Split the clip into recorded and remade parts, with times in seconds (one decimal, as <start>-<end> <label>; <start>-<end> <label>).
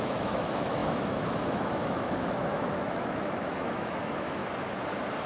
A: 0.0-4.4 remade; 4.4-5.3 recorded